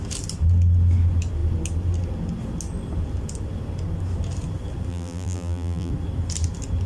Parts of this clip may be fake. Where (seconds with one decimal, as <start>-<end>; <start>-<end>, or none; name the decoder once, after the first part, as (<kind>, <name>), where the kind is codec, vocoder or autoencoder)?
4.9-5.9 (vocoder, BigVGAN v2)